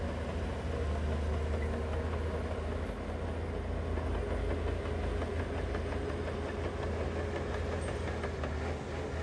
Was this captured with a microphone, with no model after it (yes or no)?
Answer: yes